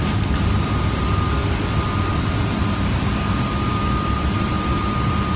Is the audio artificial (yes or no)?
no